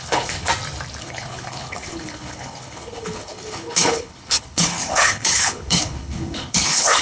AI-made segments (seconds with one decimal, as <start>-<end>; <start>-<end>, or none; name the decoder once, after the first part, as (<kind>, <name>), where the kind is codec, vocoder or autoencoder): 0.0-0.5 (codec, HILCodec); 1.0-7.0